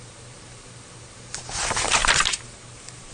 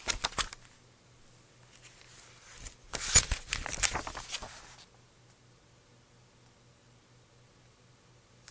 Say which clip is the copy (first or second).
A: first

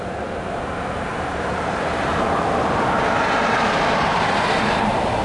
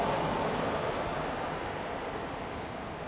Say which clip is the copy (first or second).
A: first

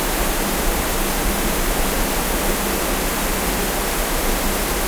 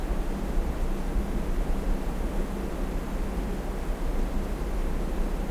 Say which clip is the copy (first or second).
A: first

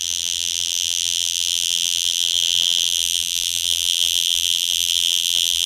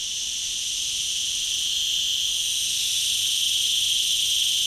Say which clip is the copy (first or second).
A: first